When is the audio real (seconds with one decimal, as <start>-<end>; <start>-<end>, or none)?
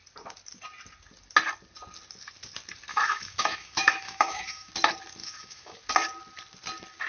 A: 0.0-2.9; 4.7-5.2; 5.8-7.1